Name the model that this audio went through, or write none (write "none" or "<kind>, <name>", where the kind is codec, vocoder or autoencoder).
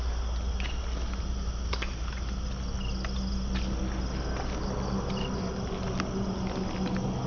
none